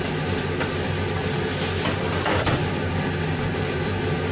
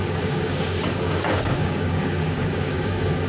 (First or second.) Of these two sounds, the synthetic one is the second